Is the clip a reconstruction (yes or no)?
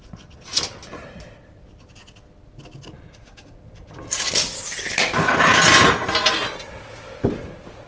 no